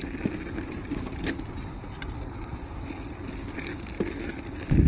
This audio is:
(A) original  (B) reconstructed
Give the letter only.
A